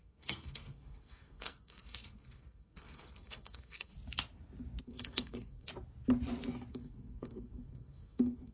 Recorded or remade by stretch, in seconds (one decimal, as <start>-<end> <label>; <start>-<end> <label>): 0.0-3.9 remade; 3.9-4.8 recorded; 4.8-5.7 remade; 5.7-6.7 recorded; 6.7-8.5 remade